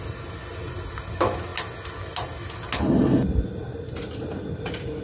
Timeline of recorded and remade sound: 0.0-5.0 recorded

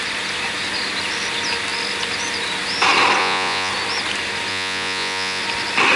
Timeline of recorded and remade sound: 0.0-3.2 recorded; 3.2-3.7 remade; 3.7-4.5 recorded; 4.5-5.4 remade; 5.4-6.0 recorded

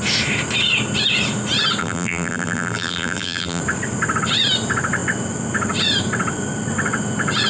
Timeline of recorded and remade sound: 0.0-1.8 recorded; 1.8-3.6 remade; 3.6-7.5 recorded

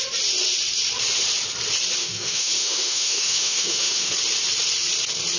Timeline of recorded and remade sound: 0.0-2.0 recorded; 2.0-4.1 remade; 4.1-5.4 recorded

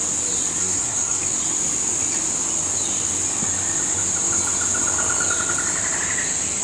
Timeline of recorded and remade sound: 0.0-0.6 recorded; 0.6-1.2 remade; 1.2-6.6 recorded